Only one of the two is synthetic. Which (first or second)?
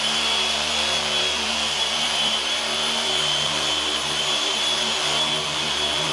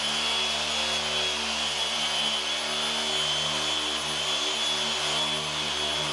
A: first